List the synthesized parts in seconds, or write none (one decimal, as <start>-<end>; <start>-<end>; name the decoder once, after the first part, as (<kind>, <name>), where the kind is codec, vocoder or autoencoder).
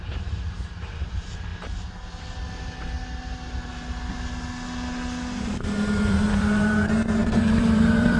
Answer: 0.0-1.5 (vocoder, BigVGAN v2); 5.4-8.2